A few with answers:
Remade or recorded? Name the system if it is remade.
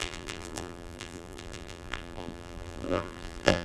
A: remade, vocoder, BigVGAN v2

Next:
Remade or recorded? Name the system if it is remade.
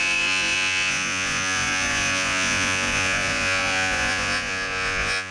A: remade, vocoder, Vocos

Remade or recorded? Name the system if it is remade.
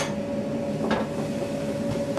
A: recorded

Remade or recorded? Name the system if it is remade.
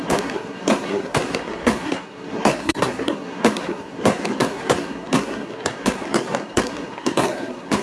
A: remade, codec, SNAC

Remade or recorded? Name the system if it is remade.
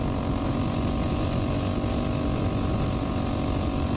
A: recorded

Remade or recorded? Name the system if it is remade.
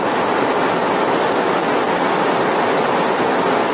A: recorded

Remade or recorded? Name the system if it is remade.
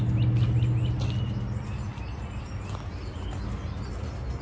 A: recorded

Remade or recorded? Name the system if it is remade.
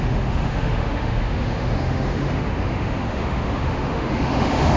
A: remade, autoencoder, DAC-VAE